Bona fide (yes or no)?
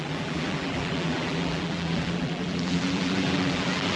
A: no